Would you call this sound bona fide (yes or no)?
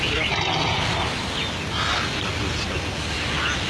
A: yes